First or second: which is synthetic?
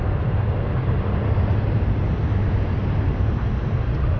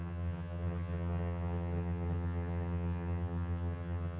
second